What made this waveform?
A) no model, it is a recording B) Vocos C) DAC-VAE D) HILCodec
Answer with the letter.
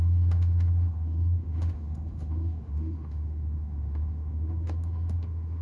C